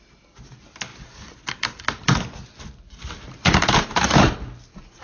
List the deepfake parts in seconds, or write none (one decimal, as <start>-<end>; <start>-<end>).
2.5-4.3